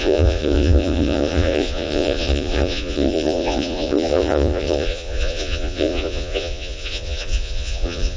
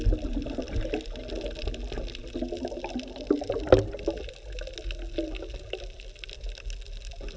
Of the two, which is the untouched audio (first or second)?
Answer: second